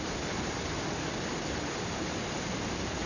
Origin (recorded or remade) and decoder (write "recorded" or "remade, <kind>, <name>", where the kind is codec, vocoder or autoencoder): recorded